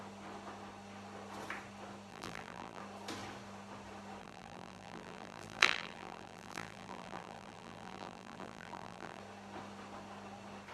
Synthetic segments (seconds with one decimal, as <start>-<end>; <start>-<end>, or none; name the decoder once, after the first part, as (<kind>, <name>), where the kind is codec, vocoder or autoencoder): 2.1-2.8 (vocoder, BigVGAN v2); 4.2-9.2